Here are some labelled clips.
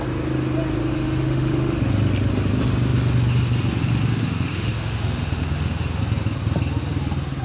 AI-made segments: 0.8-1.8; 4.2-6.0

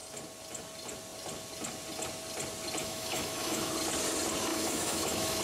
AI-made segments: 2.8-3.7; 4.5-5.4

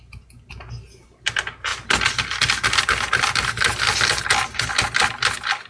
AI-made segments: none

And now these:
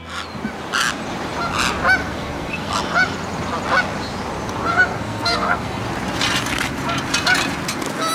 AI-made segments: 2.0-2.8; 4.7-5.8